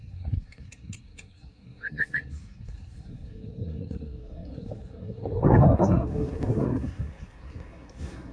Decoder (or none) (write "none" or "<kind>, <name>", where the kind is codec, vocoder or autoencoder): codec, SNAC